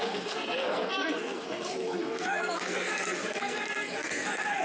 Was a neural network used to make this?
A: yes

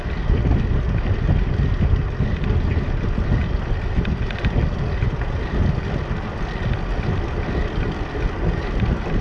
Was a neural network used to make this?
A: no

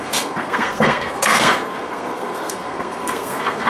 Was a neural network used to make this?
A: yes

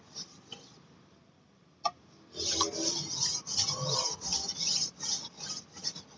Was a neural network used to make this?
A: no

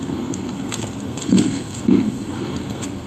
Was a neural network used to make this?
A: yes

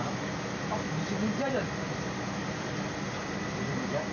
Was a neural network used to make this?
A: no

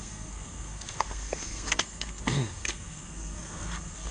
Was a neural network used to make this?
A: yes